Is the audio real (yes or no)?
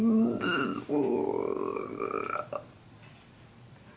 yes